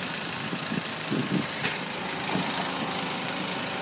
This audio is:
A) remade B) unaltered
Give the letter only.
B